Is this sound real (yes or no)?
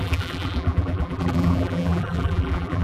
no